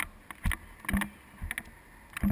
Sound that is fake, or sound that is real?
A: real